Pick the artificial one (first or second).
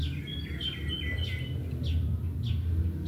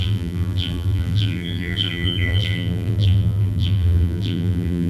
second